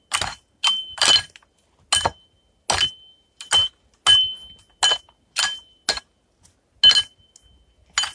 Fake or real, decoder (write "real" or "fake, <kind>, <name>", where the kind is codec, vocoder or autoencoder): real